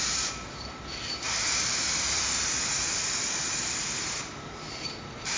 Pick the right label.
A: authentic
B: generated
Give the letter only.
B